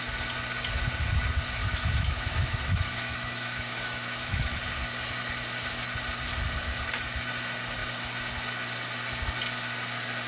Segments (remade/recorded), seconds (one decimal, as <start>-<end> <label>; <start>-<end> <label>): 0.0-1.6 recorded; 1.6-4.6 remade; 4.6-10.3 recorded

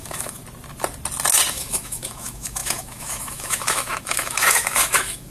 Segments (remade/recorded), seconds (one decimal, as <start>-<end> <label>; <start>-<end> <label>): 0.0-0.4 remade; 0.4-1.5 recorded; 1.5-5.3 remade

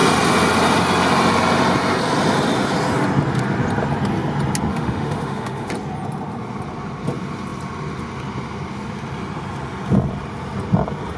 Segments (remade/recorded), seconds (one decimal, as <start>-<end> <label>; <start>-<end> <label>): 0.0-4.7 recorded; 4.7-5.7 remade; 5.7-11.2 recorded